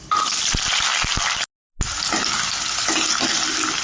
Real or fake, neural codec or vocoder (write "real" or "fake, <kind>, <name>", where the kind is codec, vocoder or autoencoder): real